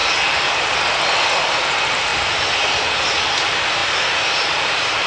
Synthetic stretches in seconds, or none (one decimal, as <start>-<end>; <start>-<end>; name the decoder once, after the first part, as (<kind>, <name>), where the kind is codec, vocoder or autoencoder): 1.4-2.1 (vocoder, BigVGAN v2); 3.2-5.1